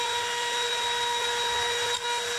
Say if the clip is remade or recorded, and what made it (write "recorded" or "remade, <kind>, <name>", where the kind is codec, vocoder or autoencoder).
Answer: recorded